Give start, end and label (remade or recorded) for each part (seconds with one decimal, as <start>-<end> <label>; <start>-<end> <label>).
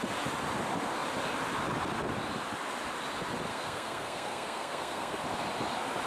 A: 0.0-3.5 recorded; 3.5-5.2 remade; 5.2-6.1 recorded